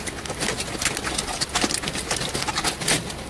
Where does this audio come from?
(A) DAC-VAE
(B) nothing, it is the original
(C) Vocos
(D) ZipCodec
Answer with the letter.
B